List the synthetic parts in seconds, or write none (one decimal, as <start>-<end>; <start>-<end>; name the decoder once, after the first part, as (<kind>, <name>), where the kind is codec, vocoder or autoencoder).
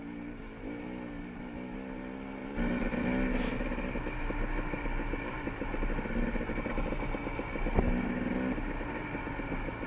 none